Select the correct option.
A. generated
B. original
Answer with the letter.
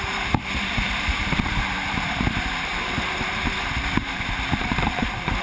A